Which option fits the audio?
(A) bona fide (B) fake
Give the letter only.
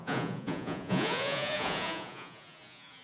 B